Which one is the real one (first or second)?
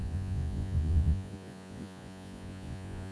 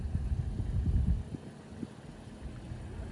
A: second